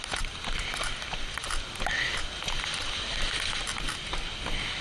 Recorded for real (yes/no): yes